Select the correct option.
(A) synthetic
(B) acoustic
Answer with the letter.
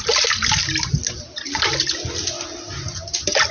B